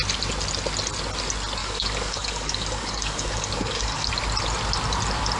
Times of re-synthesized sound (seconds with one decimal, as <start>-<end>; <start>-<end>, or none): 1.6-4.1